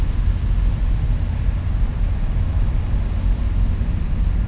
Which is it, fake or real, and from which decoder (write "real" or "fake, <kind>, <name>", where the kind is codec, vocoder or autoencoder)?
real